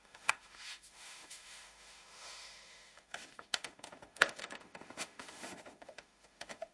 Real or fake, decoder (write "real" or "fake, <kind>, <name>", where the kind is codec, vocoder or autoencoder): fake, autoencoder, DAC-VAE